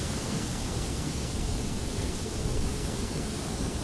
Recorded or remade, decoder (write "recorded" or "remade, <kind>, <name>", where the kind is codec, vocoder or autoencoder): remade, codec, SNAC